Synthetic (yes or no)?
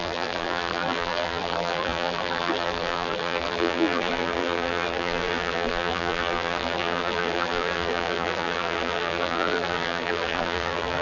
yes